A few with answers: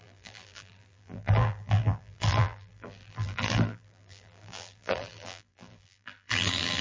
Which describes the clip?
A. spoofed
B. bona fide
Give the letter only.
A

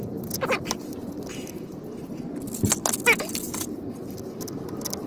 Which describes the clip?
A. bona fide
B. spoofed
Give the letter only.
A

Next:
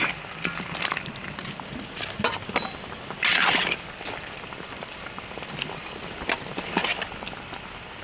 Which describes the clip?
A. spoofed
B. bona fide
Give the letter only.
A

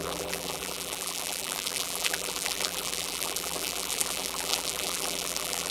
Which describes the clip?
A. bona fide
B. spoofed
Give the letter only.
B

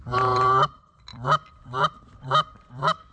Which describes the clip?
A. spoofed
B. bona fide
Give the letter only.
A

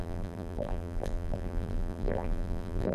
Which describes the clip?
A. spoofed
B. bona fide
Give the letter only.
A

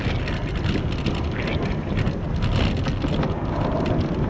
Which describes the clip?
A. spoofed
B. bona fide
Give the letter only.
B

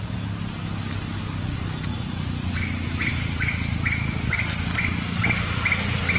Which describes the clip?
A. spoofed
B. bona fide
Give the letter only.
B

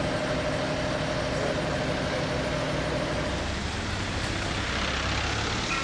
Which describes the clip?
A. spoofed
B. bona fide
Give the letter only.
B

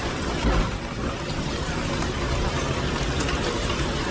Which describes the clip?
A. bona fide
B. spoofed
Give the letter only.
A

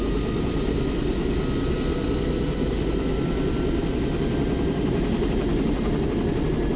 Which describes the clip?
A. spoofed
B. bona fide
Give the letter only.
B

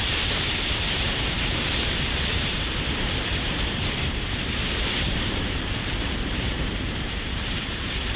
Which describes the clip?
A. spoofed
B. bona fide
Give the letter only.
A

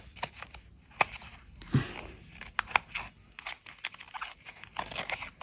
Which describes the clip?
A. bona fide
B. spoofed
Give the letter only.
A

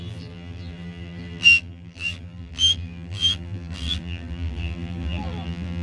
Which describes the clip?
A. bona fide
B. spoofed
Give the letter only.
B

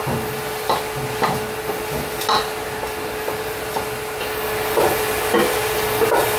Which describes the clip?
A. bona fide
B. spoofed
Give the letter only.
A